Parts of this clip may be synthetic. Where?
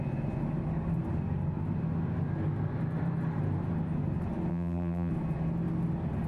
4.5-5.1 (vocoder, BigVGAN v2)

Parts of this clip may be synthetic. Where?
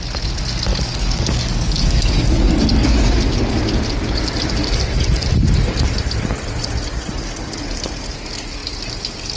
0.7-3.1 (codec, DAC)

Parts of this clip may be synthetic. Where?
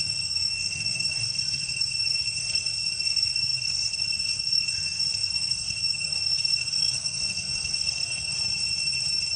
0.0-8.3 (codec, SNAC)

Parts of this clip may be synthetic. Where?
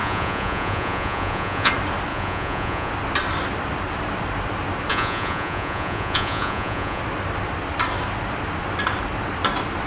0.0-1.7 (vocoder, Vocos); 2.1-2.9; 4.9-7.0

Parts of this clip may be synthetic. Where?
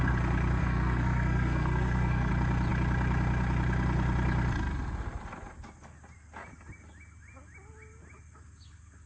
0.6-2.3 (codec, SNAC)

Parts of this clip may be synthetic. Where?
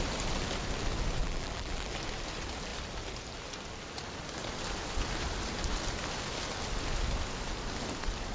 1.2-1.9 (vocoder, BigVGAN v2)